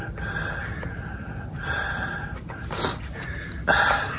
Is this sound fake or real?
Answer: real